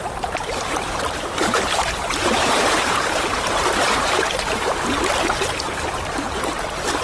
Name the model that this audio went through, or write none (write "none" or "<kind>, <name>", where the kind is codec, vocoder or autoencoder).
vocoder, BigVGAN v2